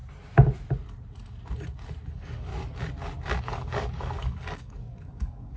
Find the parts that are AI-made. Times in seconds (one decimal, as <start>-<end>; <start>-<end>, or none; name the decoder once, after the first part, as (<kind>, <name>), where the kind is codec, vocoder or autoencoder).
2.1-2.5 (codec, DAC); 3.4-5.6